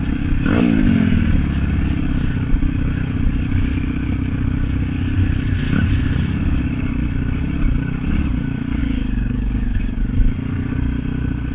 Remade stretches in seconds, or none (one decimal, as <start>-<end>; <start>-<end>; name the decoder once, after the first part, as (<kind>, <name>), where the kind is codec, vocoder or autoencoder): 8.8-10.0 (codec, DAC)

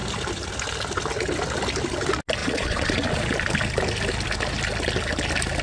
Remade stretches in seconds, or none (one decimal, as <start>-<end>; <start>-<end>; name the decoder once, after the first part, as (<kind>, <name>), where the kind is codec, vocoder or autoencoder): 2.4-3.2 (vocoder, Vocos)

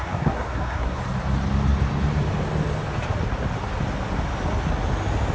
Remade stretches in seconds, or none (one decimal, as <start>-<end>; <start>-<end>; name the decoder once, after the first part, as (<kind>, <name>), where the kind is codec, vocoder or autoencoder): 0.0-1.0 (codec, SNAC)

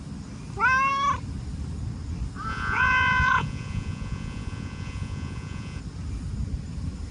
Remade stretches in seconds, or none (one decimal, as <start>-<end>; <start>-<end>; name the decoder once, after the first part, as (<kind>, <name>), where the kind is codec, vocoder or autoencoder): 2.5-5.8 (vocoder, Vocos)